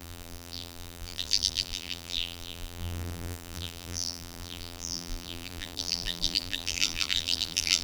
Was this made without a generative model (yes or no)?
no